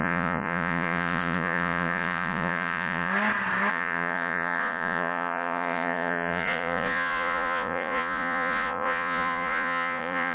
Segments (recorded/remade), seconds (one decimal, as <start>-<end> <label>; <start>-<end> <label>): 0.0-3.1 remade; 3.1-3.7 recorded; 3.7-10.3 remade